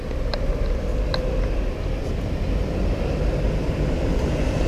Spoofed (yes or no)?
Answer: yes